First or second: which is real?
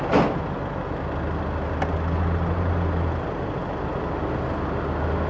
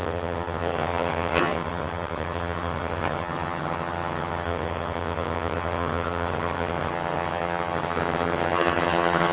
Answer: first